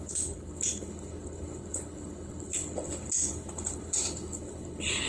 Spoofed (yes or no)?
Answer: yes